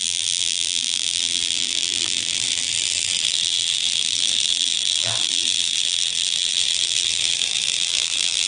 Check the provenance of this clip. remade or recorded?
remade